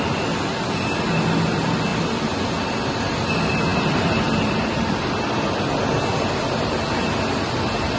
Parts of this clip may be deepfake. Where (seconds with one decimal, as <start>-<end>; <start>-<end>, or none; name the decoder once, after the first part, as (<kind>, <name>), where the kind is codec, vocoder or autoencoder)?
none